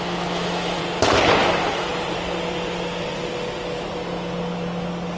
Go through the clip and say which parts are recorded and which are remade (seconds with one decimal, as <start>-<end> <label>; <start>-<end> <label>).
0.0-0.8 remade; 0.8-1.4 recorded; 1.4-1.9 remade; 1.9-5.2 recorded